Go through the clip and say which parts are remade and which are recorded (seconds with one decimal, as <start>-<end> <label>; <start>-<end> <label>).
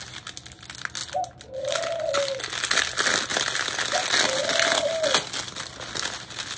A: 0.0-6.6 recorded